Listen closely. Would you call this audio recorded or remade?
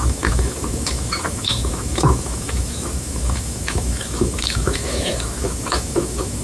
remade